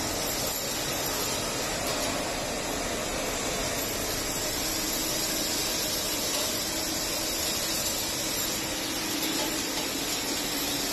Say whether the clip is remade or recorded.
recorded